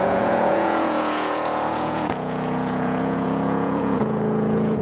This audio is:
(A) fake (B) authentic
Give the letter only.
A